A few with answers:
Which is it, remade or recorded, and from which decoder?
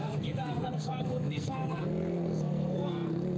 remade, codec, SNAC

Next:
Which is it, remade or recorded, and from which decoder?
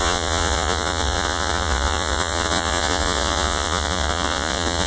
remade, vocoder, Vocos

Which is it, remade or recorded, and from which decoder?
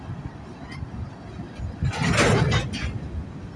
recorded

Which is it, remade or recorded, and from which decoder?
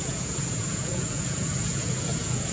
remade, vocoder, Vocos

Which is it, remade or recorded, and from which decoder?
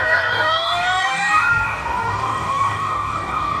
remade, codec, DAC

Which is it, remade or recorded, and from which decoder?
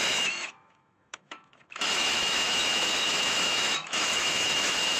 remade, autoencoder, DAC-VAE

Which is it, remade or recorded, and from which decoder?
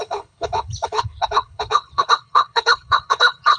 remade, codec, HILCodec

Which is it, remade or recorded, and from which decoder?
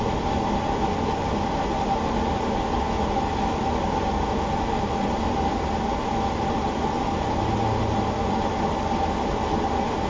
recorded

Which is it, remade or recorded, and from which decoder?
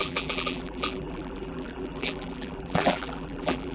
remade, vocoder, BigVGAN v2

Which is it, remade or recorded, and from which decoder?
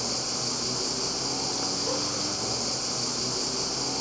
recorded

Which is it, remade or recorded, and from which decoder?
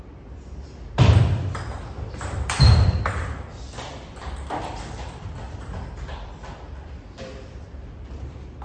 remade, vocoder, BigVGAN v2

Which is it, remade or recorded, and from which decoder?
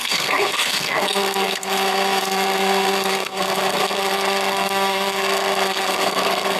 remade, codec, SNAC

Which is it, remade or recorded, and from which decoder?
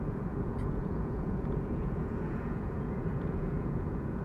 remade, vocoder, Vocos